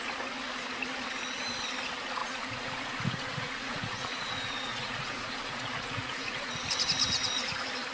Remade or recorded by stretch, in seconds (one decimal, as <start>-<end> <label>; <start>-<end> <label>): 0.0-2.2 recorded; 2.2-6.5 remade; 6.5-7.9 recorded